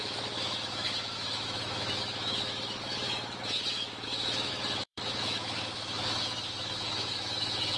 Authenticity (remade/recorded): remade